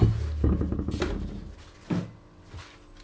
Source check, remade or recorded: recorded